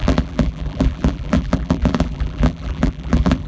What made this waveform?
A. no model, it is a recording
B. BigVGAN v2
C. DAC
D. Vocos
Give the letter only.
B